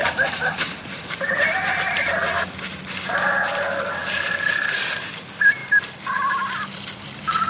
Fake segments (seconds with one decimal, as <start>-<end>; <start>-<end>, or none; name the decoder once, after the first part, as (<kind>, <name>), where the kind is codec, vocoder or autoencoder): 0.0-2.1 (vocoder, BigVGAN v2); 4.0-5.1